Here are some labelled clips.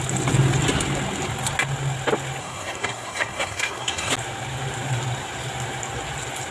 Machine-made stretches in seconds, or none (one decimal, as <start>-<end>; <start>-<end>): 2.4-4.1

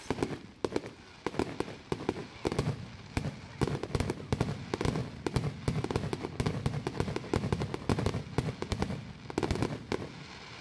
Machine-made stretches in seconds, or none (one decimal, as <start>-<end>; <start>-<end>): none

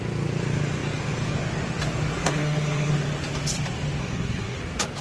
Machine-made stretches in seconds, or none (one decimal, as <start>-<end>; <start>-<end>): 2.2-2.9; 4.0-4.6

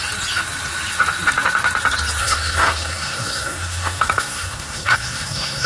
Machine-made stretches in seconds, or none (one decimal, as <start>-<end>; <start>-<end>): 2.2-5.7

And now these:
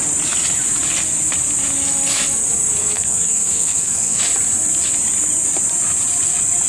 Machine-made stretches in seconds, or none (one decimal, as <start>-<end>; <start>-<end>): 2.8-4.2